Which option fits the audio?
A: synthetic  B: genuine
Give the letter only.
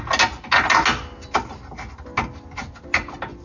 B